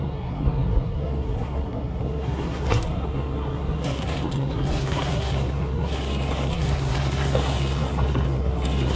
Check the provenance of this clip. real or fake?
fake